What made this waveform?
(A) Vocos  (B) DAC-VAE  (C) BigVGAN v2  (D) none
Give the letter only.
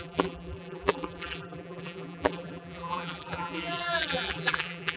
C